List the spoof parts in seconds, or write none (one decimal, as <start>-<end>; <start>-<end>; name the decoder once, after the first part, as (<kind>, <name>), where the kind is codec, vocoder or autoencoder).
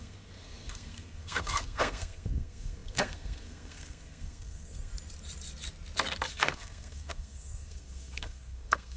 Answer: 0.0-4.9 (codec, SNAC); 6.3-9.0